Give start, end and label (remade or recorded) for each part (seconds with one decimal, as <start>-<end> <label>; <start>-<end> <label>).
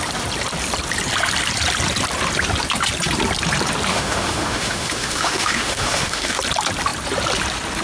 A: 0.0-3.9 recorded; 3.9-6.4 remade; 6.4-7.8 recorded